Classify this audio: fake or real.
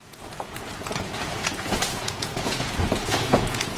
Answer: fake